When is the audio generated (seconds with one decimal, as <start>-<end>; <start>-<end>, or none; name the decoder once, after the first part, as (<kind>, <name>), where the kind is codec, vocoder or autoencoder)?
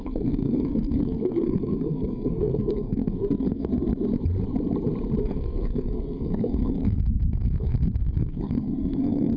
0.0-3.7 (codec, SNAC); 5.2-9.4